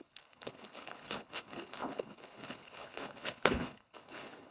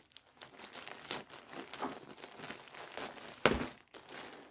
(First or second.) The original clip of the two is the second